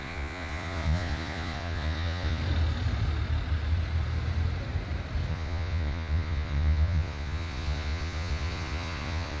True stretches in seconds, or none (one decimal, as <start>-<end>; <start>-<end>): 2.4-5.3